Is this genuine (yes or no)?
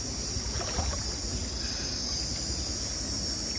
yes